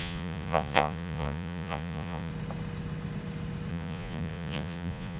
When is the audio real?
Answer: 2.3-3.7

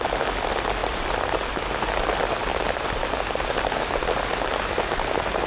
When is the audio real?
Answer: 0.0-0.8; 1.5-5.5

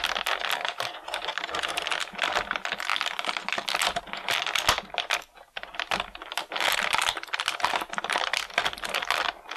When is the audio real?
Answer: 0.0-9.6